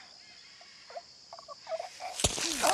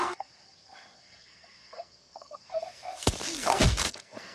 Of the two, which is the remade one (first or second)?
second